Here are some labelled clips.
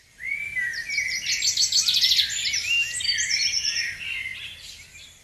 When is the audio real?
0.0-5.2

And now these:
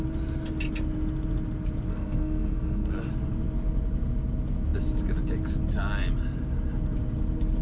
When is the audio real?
0.0-1.9; 3.1-7.6

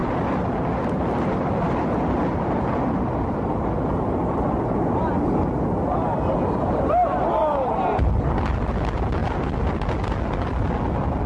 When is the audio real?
0.0-11.3

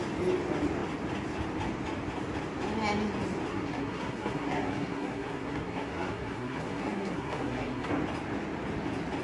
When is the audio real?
0.0-3.5; 7.9-9.2

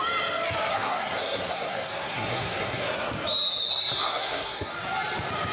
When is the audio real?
0.0-0.7; 3.1-3.7; 4.7-5.5

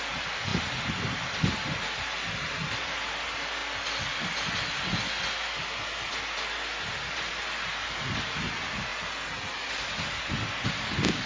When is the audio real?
0.0-11.3